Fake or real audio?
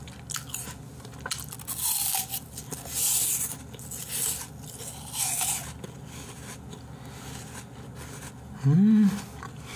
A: real